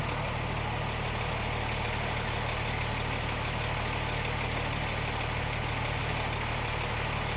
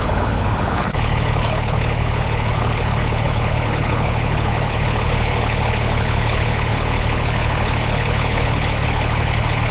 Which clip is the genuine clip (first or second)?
first